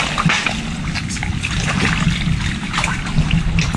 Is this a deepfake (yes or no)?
no